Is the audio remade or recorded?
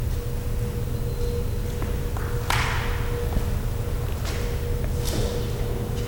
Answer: recorded